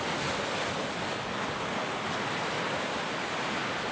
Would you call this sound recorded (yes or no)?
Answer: yes